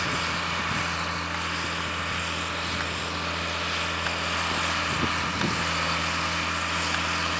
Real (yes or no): yes